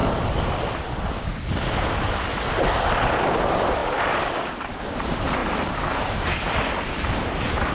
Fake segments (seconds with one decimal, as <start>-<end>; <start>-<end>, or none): 2.9-3.8; 4.5-5.4; 6.0-7.7